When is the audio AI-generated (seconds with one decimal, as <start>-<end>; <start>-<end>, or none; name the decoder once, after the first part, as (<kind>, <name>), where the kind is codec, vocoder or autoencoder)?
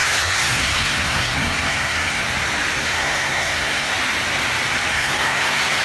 0.0-2.2 (codec, SNAC); 2.8-3.9; 4.9-5.8